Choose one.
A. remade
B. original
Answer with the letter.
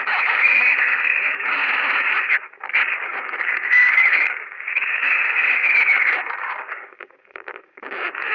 A